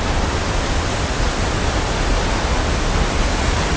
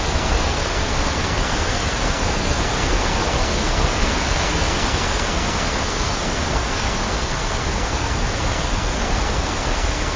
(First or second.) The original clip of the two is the first